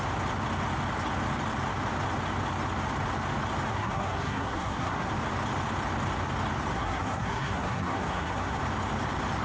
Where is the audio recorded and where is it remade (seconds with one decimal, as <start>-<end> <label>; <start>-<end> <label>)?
0.0-3.7 recorded; 3.7-5.1 remade; 5.1-6.7 recorded; 6.7-8.6 remade; 8.6-9.4 recorded